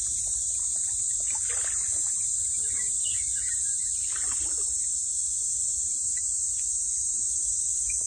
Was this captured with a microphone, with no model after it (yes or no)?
yes